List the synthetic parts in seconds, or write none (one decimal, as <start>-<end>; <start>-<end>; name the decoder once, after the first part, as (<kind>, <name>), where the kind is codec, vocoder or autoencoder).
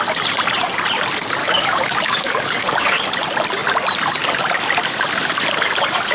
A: 1.4-3.0 (codec, DAC)